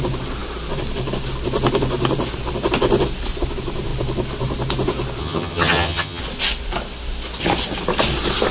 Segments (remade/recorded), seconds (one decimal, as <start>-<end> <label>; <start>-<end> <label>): 0.0-5.2 recorded; 5.2-6.2 remade; 6.2-8.5 recorded

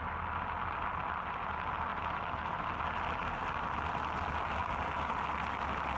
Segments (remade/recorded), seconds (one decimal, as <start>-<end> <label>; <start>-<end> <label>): 0.0-6.0 recorded

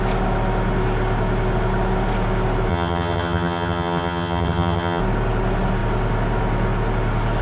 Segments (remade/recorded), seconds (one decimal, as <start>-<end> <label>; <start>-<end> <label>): 0.0-2.7 recorded; 2.7-5.0 remade; 5.0-7.4 recorded

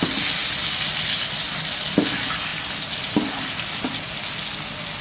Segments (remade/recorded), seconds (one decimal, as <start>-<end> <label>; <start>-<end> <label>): 0.0-5.0 recorded

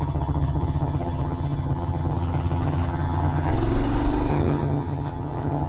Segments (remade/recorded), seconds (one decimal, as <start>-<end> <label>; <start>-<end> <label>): 0.0-3.5 remade; 3.5-4.3 recorded; 4.3-5.7 remade

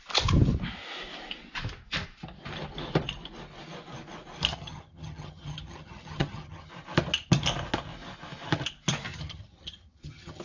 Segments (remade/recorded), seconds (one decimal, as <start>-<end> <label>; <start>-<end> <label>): 0.0-4.5 recorded; 4.5-6.7 remade; 6.7-9.1 recorded; 9.1-10.4 remade

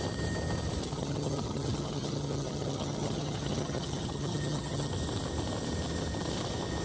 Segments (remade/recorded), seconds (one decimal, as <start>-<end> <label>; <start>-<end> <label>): 0.0-0.8 recorded; 0.8-4.9 remade; 4.9-6.8 recorded

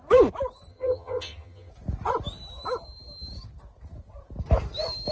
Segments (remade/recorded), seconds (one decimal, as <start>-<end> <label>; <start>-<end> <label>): 0.0-0.7 recorded; 0.7-1.7 remade; 1.7-5.1 recorded